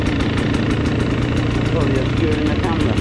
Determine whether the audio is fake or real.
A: real